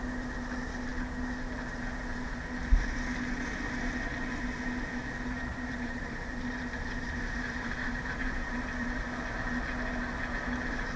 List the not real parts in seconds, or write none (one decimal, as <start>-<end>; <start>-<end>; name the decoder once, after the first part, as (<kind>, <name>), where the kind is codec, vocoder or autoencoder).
5.5-9.0 (vocoder, BigVGAN v2)